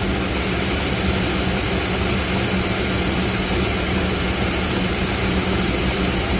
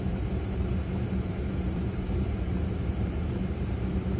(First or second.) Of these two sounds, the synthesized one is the second